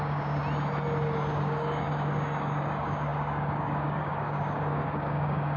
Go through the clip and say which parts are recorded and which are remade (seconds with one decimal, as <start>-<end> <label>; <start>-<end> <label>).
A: 0.0-0.4 remade; 0.4-1.3 recorded; 1.3-5.6 remade